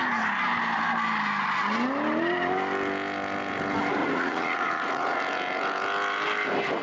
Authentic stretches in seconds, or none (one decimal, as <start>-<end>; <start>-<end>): 0.0-4.0; 5.2-6.8